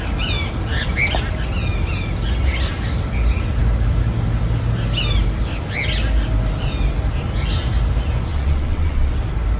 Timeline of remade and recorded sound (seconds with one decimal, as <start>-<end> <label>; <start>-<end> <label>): 0.0-8.3 recorded; 8.3-9.1 remade; 9.1-9.6 recorded